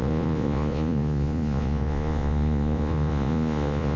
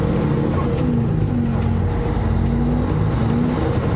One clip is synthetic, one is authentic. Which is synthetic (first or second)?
first